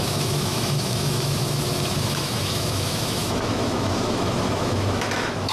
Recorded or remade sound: remade